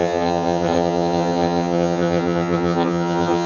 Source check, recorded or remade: remade